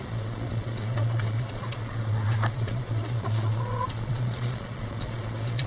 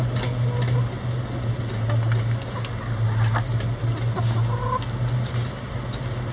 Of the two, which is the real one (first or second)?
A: second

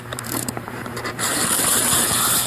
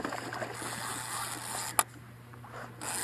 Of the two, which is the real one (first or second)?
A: second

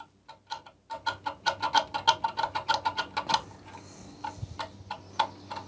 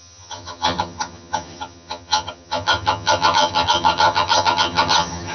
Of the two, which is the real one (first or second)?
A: first